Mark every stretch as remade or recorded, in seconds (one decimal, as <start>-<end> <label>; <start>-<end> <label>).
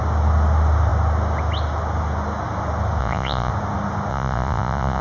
0.0-3.0 recorded; 3.0-3.5 remade; 3.5-4.1 recorded; 4.1-5.0 remade